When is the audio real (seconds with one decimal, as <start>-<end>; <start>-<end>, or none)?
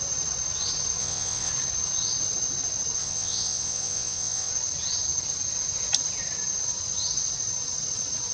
0.0-1.0; 1.5-3.0; 4.5-8.3